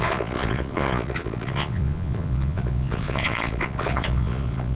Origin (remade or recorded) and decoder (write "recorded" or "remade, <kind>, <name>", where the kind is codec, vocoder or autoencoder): remade, vocoder, Vocos